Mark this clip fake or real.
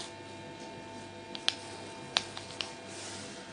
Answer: real